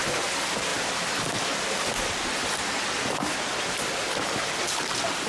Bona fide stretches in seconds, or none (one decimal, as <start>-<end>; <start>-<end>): 0.0-5.3